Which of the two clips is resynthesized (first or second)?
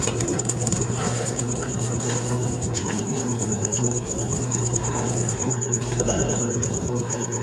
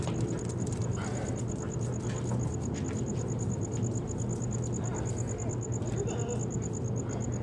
first